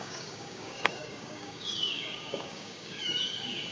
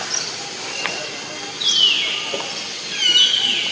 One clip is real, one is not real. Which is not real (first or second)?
first